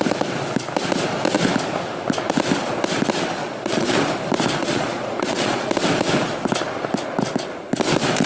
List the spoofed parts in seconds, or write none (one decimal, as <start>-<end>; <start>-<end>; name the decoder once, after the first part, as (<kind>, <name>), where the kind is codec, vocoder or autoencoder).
3.4-4.0 (vocoder, Vocos); 4.6-5.7